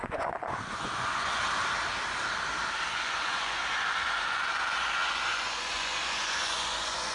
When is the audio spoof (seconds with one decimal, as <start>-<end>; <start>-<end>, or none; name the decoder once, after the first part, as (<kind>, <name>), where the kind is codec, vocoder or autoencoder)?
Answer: 0.0-1.4 (vocoder, Vocos); 2.9-7.1